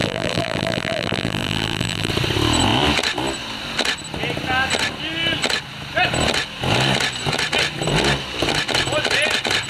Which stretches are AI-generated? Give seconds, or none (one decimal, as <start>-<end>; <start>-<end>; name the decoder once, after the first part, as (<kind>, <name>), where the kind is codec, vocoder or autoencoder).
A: 0.0-2.1 (vocoder, BigVGAN v2)